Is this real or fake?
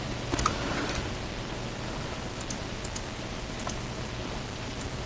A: real